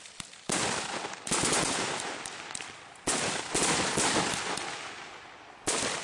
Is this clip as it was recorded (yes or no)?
yes